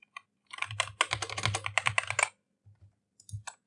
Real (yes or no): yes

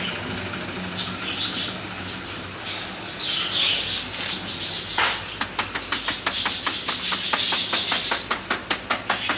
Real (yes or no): yes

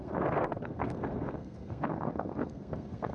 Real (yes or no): no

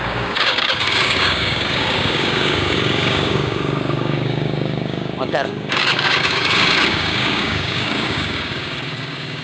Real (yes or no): no